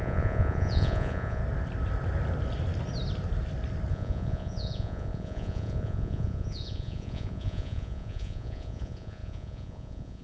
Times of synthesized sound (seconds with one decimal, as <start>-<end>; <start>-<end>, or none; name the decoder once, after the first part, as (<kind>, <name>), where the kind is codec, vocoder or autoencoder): 0.0-1.4 (vocoder, Vocos); 3.9-10.2